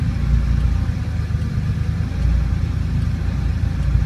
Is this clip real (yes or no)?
yes